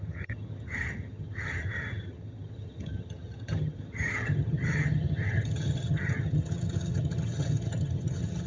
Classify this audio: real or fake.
fake